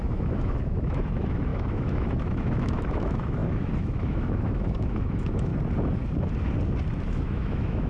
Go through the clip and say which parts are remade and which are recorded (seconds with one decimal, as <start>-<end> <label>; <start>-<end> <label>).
0.0-5.5 remade; 5.5-7.1 recorded; 7.1-7.9 remade